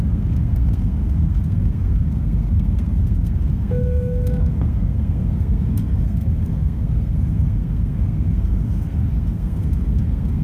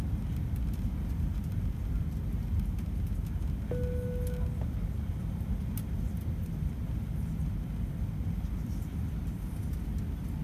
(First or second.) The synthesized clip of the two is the first